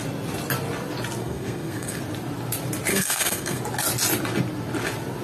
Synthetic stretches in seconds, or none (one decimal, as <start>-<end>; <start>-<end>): 1.2-2.0; 2.9-3.6